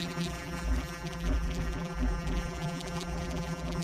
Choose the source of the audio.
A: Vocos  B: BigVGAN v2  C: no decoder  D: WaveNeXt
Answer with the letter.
B